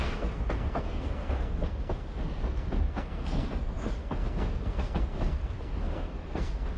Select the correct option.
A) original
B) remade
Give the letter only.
B